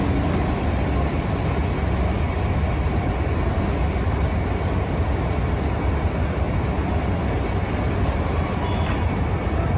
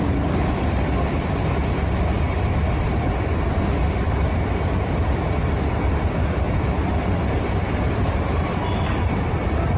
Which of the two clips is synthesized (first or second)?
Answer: second